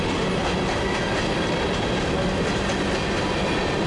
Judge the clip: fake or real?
real